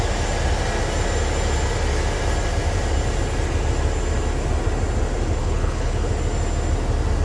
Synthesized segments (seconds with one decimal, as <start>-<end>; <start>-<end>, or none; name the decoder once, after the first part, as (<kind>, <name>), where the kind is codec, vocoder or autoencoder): 5.4-6.1 (codec, HILCodec)